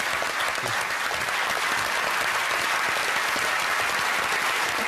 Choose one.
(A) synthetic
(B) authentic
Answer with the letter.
B